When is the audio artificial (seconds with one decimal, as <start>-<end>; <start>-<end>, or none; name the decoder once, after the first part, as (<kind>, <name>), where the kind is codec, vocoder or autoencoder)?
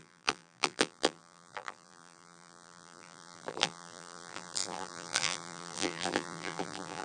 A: 0.0-7.0 (vocoder, BigVGAN v2)